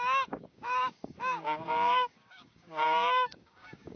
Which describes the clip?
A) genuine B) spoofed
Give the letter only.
B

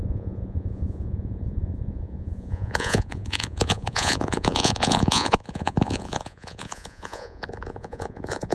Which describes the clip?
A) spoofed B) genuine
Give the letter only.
A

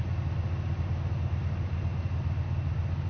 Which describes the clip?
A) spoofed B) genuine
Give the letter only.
B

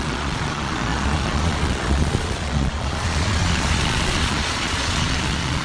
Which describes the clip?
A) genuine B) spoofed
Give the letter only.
B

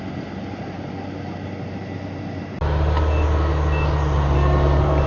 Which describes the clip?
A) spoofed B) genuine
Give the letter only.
B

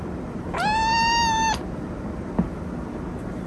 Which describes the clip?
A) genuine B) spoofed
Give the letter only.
A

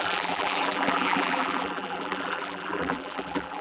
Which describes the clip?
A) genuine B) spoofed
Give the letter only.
B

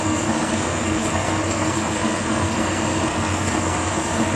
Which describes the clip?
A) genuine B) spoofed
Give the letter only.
B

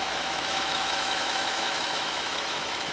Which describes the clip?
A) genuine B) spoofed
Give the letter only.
B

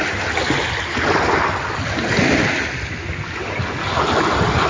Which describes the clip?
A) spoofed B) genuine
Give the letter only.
B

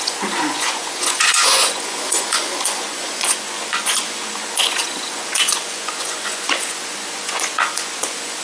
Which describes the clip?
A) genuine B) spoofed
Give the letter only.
B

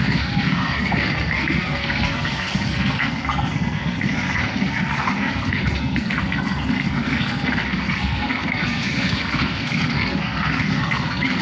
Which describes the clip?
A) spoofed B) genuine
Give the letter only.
A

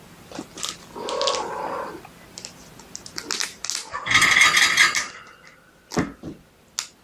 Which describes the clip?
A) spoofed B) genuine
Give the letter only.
B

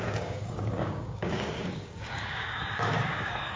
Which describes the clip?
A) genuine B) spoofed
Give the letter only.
B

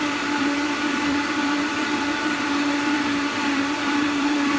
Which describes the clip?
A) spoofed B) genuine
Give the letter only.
A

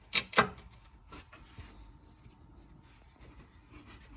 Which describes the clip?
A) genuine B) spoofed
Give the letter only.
A